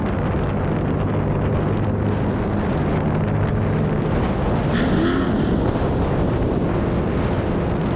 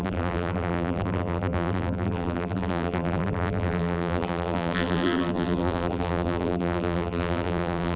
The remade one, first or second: second